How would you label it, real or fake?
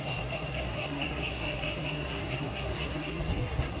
fake